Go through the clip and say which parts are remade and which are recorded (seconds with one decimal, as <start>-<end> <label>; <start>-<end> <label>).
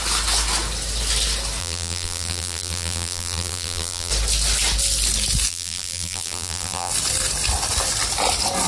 0.0-1.6 recorded; 1.6-4.1 remade; 4.1-5.5 recorded; 5.5-6.9 remade; 6.9-8.7 recorded